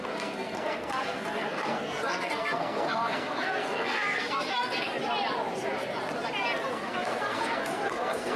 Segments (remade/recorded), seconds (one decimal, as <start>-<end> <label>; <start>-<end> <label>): 0.0-4.9 remade; 4.9-6.6 recorded; 6.6-8.4 remade